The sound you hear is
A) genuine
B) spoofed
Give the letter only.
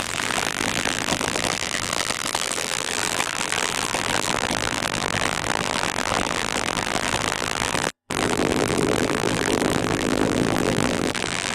B